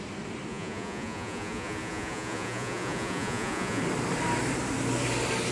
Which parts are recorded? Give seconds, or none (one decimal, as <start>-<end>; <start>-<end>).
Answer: 0.0-0.5; 3.8-5.5